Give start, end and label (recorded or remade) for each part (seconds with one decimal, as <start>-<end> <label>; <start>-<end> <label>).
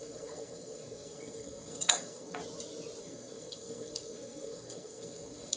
0.0-2.4 remade; 2.4-3.0 recorded; 3.0-5.6 remade